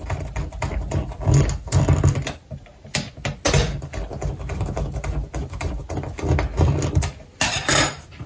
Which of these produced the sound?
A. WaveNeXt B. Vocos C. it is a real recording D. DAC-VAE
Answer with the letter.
C